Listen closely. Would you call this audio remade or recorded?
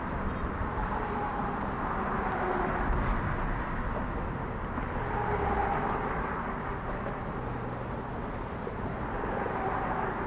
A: recorded